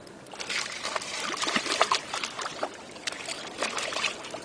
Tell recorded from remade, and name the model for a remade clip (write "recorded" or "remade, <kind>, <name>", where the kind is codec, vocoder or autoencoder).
recorded